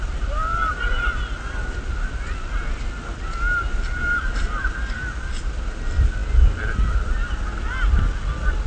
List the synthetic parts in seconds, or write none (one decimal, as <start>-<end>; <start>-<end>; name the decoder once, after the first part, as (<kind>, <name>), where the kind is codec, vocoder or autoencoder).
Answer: 0.4-1.9 (vocoder, BigVGAN v2); 4.0-5.1